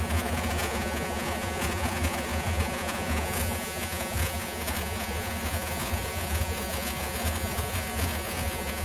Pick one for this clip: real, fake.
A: fake